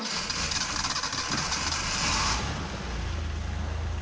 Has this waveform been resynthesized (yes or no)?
no